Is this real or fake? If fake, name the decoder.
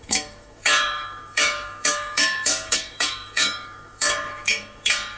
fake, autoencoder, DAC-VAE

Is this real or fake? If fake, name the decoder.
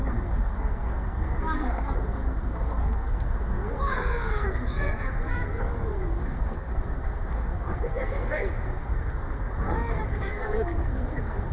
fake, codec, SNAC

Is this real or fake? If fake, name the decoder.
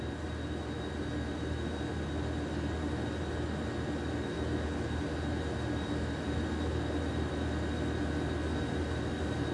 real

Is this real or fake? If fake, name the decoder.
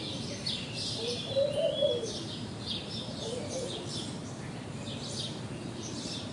fake, vocoder, BigVGAN v2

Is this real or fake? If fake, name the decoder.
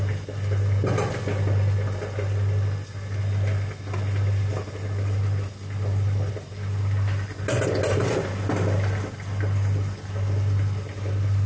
real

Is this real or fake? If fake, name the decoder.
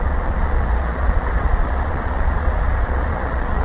fake, vocoder, Vocos